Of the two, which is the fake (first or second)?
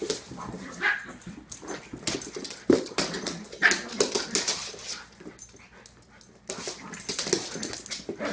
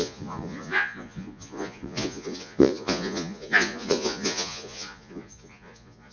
second